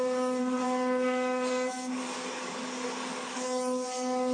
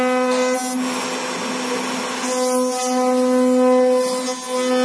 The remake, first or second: first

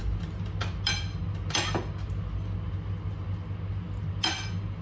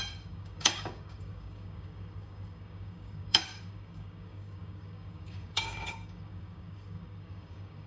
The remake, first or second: second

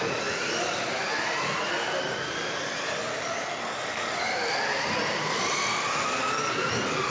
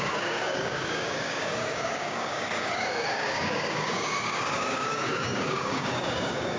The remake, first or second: second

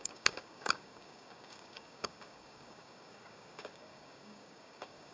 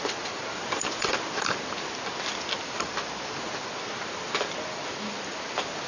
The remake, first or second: first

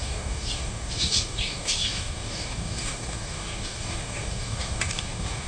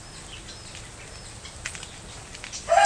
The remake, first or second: first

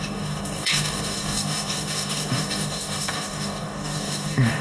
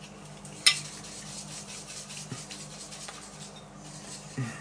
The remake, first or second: first